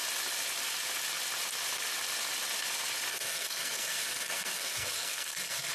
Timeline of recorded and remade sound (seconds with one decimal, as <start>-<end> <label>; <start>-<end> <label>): 0.0-3.1 recorded; 3.1-5.7 remade